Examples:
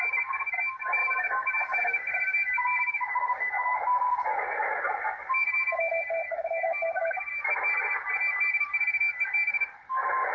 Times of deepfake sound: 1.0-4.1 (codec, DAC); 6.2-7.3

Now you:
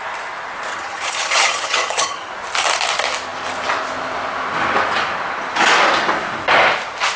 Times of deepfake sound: 0.7-2.3 (vocoder, HiFi-GAN)

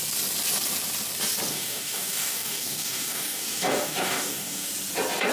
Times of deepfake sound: 1.5-4.7 (codec, DAC)

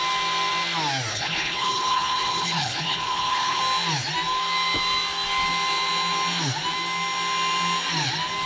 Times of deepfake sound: 1.1-3.6 (codec, HILCodec)

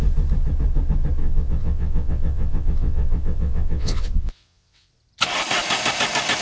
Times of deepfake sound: 1.2-4.9 (vocoder, WaveNeXt)

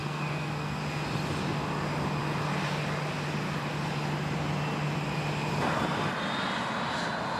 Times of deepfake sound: 0.0-0.8 (codec, SNAC)

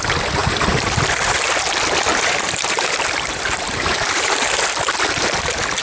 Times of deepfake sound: 0.4-1.0 (vocoder, BigVGAN v2); 2.1-4.6